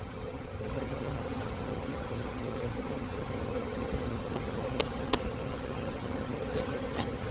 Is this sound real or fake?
fake